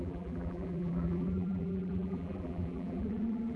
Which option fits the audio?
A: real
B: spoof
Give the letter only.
B